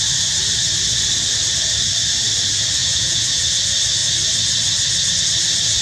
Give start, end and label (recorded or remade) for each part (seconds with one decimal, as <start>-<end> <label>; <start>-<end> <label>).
0.0-2.8 recorded; 2.8-3.5 remade; 3.5-5.8 recorded